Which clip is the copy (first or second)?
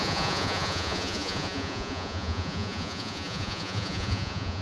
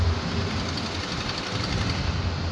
first